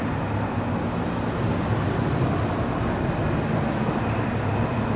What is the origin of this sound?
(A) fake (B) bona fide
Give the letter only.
B